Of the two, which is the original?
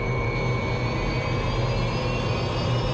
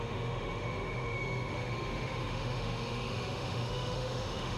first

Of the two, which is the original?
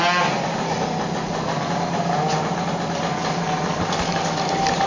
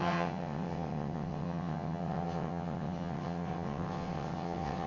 first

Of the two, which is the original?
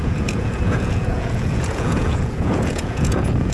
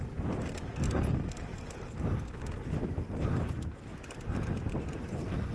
second